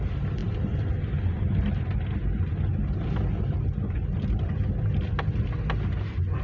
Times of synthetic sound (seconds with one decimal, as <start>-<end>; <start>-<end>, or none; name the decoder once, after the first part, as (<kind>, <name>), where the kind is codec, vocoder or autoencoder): none